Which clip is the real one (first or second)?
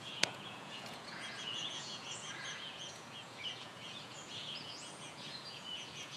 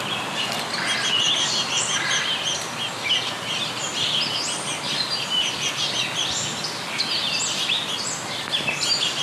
second